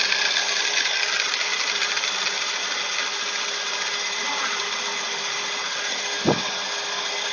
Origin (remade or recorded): recorded